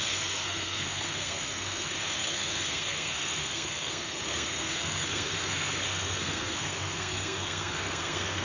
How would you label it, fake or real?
fake